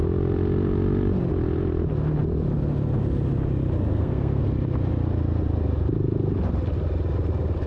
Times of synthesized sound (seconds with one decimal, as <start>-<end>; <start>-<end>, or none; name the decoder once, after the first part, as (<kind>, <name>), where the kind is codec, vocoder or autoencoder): 3.9-4.4 (codec, SNAC)